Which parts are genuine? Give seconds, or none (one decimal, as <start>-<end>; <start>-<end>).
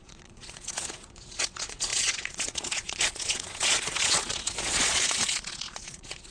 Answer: none